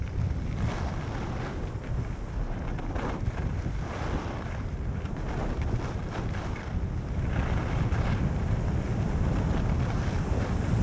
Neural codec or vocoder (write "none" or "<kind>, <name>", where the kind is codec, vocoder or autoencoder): none